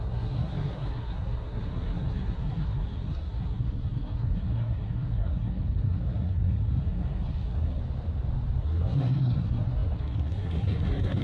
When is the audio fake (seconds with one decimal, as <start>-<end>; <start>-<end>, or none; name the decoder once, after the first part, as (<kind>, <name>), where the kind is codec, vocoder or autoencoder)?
0.0-7.8 (codec, SNAC); 8.6-11.2